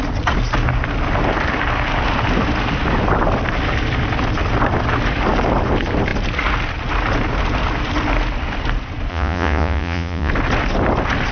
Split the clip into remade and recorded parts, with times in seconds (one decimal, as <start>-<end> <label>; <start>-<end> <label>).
0.0-9.1 recorded; 9.1-10.3 remade; 10.3-11.3 recorded